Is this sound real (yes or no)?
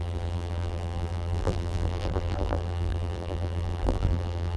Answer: no